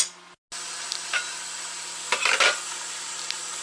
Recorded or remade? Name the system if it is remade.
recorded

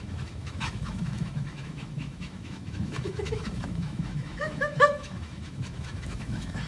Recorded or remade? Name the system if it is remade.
remade, autoencoder, DAC-VAE